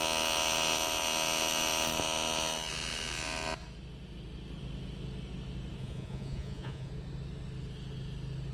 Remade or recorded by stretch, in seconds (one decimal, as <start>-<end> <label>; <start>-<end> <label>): 0.0-5.8 recorded; 5.8-6.9 remade; 6.9-8.5 recorded